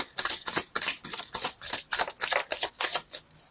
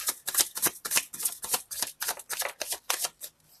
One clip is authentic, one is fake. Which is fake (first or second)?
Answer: second